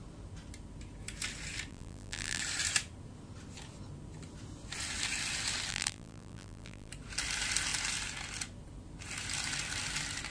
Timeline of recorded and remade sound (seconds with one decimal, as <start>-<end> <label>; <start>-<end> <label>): 0.0-1.7 recorded; 1.7-2.4 remade; 2.4-5.7 recorded; 5.7-6.9 remade; 6.9-10.3 recorded